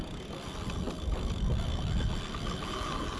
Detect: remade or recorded recorded